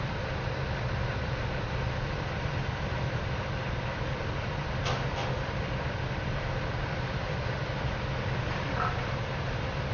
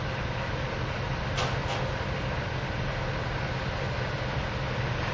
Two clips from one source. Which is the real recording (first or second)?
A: second